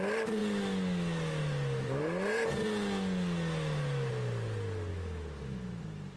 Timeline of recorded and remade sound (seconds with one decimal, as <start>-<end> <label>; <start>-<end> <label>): 0.0-4.9 recorded; 4.9-5.8 remade; 5.8-6.2 recorded